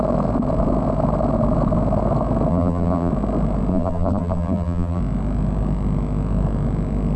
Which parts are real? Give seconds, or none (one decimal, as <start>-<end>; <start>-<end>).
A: 0.0-2.5; 3.1-3.7; 5.0-7.2

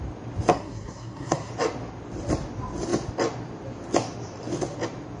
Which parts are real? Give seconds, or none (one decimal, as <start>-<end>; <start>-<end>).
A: 0.0-0.5; 1.5-5.2

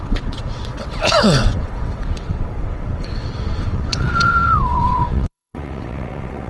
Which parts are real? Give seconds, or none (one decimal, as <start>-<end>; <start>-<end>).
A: none

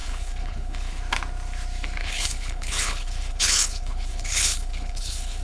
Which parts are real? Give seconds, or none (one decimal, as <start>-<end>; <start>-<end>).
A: 1.0-2.0